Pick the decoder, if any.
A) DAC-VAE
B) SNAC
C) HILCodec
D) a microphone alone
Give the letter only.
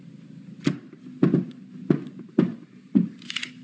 D